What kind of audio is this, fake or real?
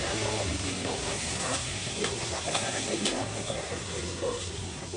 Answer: fake